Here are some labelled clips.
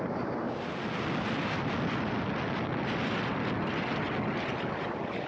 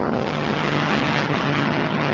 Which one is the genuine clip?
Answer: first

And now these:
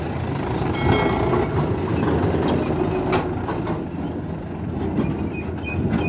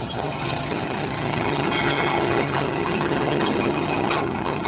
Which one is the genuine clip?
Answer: first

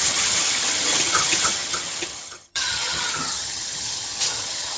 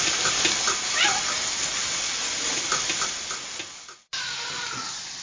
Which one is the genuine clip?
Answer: second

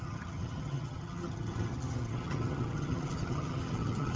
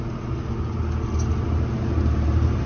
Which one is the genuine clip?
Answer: second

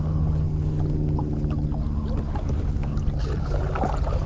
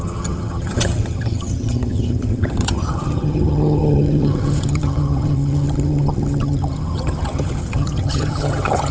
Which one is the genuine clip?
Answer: first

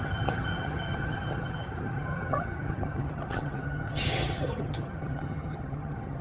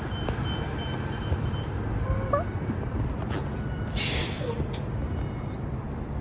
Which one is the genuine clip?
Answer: second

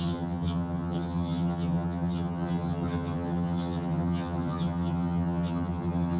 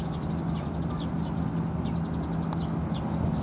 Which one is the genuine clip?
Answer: second